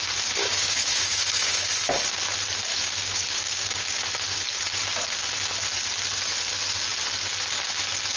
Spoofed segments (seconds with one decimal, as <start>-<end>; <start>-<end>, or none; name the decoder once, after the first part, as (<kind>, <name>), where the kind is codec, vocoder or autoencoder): 0.4-1.7 (codec, DAC); 2.7-4.0